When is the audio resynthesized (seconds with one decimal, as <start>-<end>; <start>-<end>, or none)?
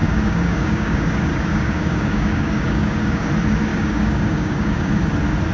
0.0-3.3; 3.7-5.0